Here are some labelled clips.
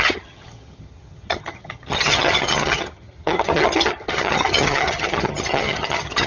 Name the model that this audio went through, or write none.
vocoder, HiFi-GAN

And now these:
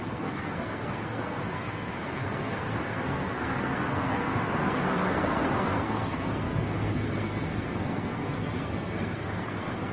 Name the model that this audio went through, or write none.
codec, SNAC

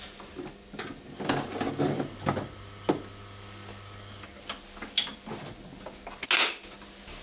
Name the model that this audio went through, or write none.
none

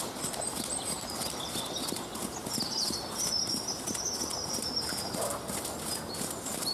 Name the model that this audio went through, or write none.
none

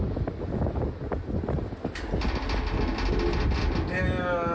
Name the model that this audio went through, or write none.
none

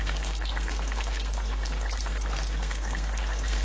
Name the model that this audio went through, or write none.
codec, SNAC